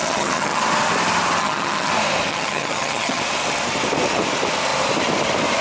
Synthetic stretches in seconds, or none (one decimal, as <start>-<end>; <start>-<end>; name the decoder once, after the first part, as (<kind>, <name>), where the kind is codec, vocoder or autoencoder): 0.0-0.6 (vocoder, HiFi-GAN); 1.4-1.9; 2.3-3.2